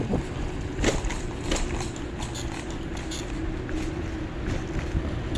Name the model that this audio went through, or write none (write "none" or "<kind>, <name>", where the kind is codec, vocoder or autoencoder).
none